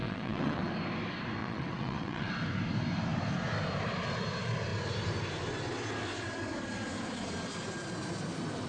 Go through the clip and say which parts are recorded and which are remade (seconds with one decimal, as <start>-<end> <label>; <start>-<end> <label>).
0.0-0.7 remade; 0.7-1.4 recorded; 1.4-2.3 remade; 2.3-8.7 recorded